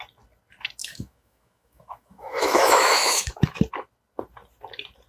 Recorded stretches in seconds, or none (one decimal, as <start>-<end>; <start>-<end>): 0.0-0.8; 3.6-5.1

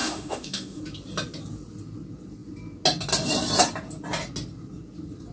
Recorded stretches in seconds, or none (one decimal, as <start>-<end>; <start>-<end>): 0.8-5.3

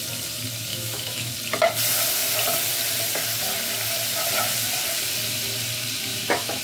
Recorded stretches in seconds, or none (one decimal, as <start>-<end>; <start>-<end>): 0.0-0.7; 1.3-6.1

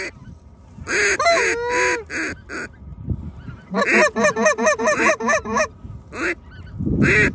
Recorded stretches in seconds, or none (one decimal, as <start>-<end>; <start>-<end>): 0.0-7.3

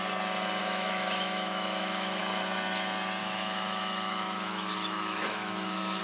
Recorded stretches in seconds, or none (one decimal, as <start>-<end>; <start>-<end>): 0.0-0.6; 2.2-3.2

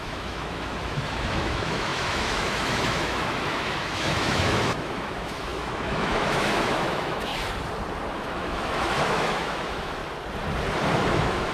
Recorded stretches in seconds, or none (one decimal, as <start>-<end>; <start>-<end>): 7.3-8.1; 10.0-11.1